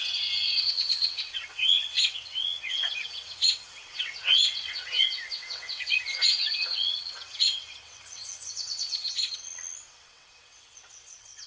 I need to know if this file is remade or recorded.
remade